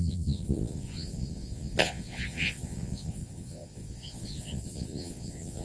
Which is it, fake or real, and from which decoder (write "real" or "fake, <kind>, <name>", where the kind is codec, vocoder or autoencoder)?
fake, vocoder, Vocos